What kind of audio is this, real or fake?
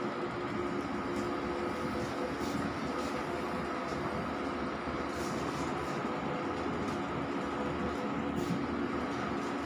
real